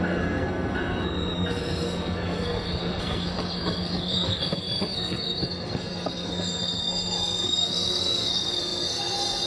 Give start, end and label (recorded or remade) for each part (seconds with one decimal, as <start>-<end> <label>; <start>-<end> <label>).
0.0-9.5 remade